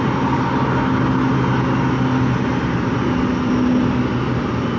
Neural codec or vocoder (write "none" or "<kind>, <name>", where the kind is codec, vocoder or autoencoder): none